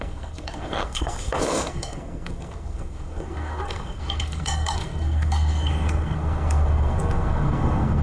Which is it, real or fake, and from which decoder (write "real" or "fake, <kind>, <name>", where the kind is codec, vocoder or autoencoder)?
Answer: fake, codec, SNAC